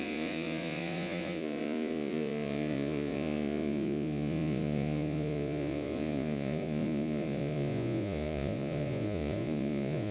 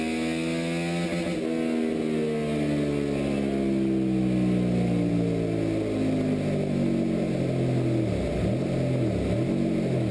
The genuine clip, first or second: second